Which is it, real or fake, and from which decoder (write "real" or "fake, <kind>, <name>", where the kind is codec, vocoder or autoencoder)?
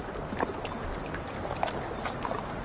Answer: real